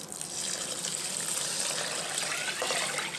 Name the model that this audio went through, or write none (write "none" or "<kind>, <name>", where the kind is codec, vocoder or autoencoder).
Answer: none